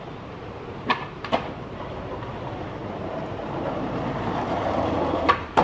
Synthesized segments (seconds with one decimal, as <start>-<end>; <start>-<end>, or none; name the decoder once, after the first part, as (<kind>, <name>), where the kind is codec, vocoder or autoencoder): 0.0-5.6 (vocoder, BigVGAN v2)